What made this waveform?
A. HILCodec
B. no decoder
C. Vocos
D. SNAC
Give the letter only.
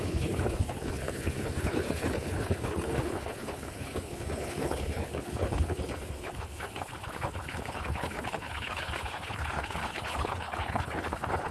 A